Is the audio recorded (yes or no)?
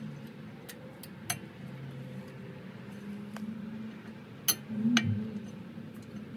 yes